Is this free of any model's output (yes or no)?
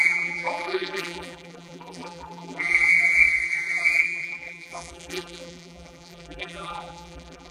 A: no